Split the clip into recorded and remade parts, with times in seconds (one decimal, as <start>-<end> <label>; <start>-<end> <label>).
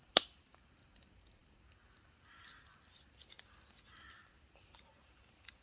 0.0-5.6 recorded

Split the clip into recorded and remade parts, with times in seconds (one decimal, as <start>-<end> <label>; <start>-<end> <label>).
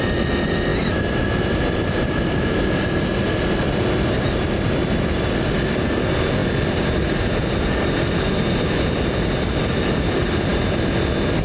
0.0-11.4 recorded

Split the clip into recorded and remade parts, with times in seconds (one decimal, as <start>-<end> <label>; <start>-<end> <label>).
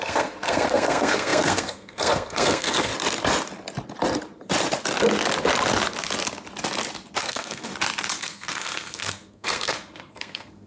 0.0-2.9 remade; 2.9-7.2 recorded; 7.2-7.7 remade; 7.7-8.2 recorded; 8.2-10.7 remade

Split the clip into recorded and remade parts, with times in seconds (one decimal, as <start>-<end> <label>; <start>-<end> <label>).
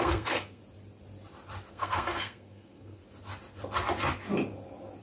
0.0-0.6 remade; 0.6-1.7 recorded; 1.7-3.0 remade; 3.0-5.0 recorded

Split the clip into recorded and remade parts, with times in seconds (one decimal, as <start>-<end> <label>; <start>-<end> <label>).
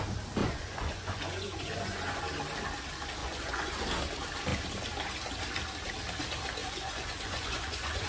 0.0-0.4 recorded; 0.4-2.2 remade; 2.2-3.2 recorded; 3.2-3.7 remade; 3.7-6.6 recorded; 6.6-8.1 remade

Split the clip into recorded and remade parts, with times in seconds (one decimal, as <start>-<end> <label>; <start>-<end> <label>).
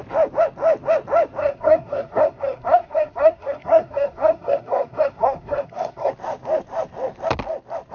0.0-1.4 recorded; 1.4-6.1 remade; 6.1-7.9 recorded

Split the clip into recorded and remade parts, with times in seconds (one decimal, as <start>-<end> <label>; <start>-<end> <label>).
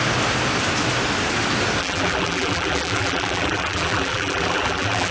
0.0-1.8 recorded; 1.8-5.1 remade